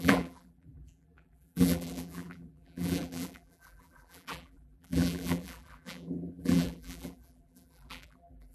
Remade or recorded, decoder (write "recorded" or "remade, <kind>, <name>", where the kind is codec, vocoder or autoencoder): remade, vocoder, BigVGAN v2